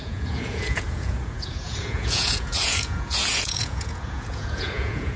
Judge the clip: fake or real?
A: fake